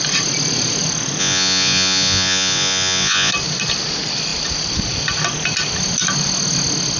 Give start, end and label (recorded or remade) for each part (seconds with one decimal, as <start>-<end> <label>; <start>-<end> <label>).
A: 0.0-1.2 recorded; 1.2-3.3 remade; 3.3-7.0 recorded